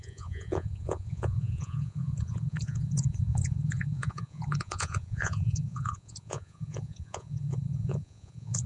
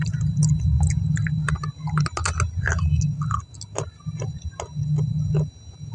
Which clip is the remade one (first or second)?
first